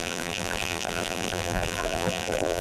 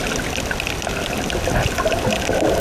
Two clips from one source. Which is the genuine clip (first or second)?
second